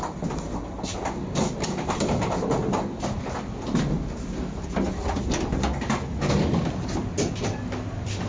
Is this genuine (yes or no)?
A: yes